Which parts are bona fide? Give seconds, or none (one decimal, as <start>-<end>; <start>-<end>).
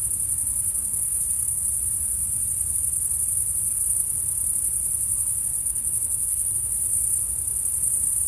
0.0-0.7; 1.6-5.6; 6.7-8.3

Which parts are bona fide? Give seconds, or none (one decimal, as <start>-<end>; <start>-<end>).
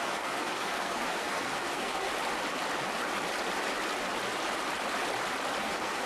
2.1-5.6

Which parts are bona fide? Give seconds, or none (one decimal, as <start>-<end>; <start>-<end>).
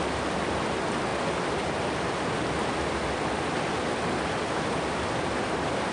0.0-5.9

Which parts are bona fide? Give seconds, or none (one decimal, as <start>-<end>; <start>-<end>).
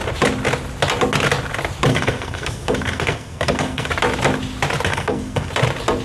0.0-1.9; 3.9-4.9; 5.5-6.0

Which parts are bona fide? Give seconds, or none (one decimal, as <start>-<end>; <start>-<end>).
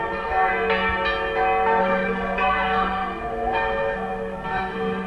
0.5-1.8